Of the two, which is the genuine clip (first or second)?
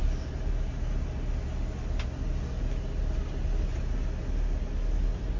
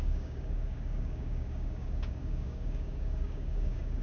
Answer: first